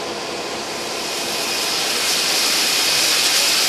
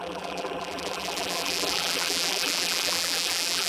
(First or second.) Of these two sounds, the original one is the first